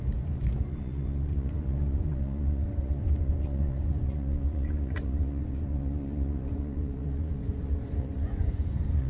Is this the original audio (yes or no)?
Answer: no